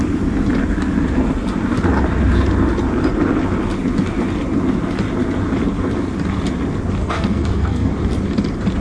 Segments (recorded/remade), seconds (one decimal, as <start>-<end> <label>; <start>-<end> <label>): 0.0-7.0 recorded; 7.0-7.9 remade; 7.9-8.8 recorded